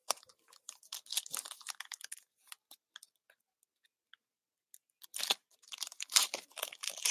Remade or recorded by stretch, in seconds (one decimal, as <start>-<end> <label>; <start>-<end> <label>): 0.0-0.8 remade; 0.8-5.5 recorded; 5.5-6.0 remade; 6.0-7.1 recorded